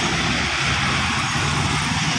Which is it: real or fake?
real